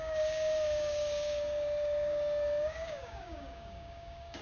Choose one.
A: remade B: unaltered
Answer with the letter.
A